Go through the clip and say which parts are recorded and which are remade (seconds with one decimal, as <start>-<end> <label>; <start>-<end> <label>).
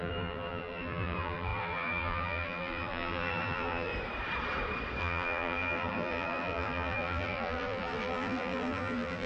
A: 0.0-3.9 remade; 3.9-5.0 recorded; 5.0-9.3 remade